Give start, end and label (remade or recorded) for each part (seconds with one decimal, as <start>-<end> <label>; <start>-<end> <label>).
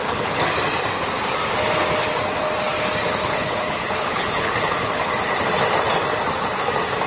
0.0-0.5 remade; 0.5-3.1 recorded; 3.1-5.1 remade; 5.1-7.1 recorded